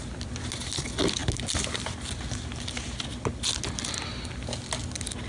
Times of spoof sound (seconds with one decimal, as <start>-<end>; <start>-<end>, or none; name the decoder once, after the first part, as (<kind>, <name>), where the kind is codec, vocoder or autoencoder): none